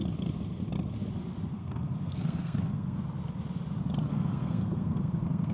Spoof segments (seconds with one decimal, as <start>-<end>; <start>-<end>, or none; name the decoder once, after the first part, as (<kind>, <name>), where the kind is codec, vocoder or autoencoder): 1.5-3.0 (codec, SNAC); 4.1-5.5